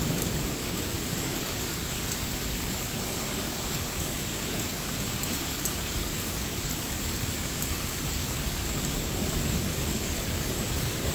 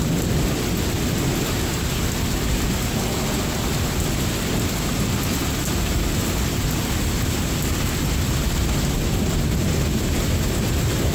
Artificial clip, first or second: first